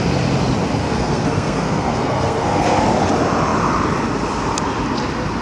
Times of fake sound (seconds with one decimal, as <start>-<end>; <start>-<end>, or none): 0.8-2.8